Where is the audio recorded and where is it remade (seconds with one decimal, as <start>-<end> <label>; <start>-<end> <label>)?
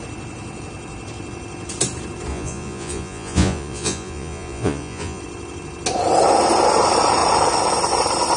0.0-2.3 recorded; 2.3-5.2 remade; 5.2-8.4 recorded